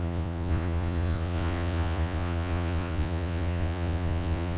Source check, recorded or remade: remade